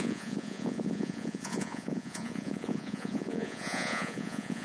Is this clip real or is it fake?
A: fake